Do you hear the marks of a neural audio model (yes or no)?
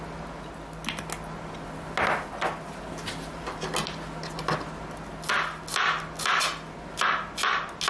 no